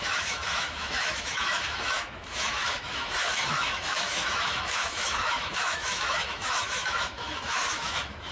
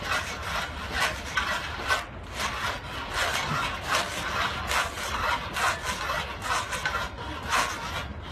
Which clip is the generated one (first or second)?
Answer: first